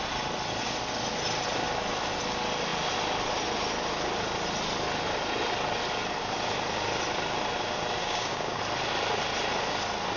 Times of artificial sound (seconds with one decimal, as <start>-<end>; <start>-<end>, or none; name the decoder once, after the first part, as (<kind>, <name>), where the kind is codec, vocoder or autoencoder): 8.0-8.6 (codec, DAC)